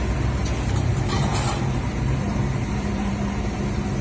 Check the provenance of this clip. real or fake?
fake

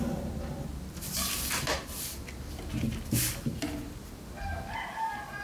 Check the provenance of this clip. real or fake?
real